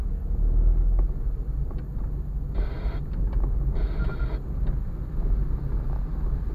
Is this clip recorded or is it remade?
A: recorded